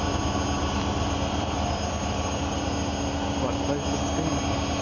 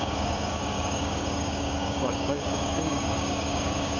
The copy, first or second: second